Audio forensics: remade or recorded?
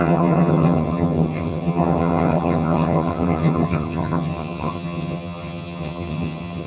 remade